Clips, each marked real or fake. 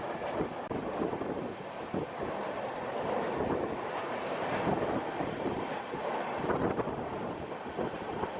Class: real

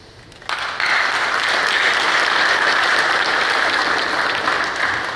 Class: real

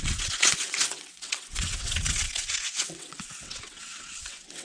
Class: fake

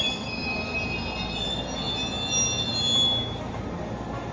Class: real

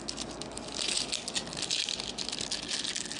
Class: real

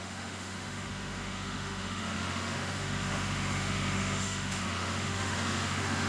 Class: fake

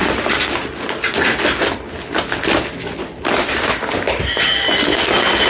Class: real